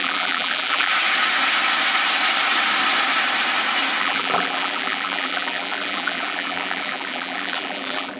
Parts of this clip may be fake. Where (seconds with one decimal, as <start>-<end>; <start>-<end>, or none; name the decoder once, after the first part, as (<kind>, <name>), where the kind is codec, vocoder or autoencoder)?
0.0-0.9 (vocoder, BigVGAN v2); 4.0-8.2